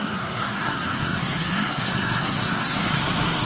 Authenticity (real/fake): fake